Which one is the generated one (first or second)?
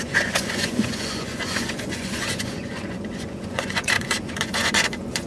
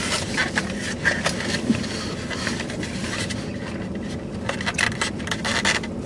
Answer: first